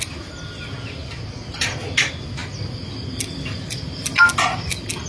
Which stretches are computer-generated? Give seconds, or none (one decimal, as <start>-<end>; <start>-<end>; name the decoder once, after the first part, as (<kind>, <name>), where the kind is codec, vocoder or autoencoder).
none